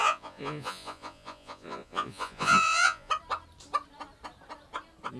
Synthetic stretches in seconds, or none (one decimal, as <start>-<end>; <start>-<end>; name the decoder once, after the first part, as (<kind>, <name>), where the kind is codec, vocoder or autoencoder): 0.0-3.1 (vocoder, Vocos)